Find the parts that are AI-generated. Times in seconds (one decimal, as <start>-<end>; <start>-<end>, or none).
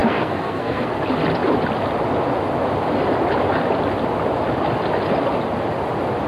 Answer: 0.0-0.9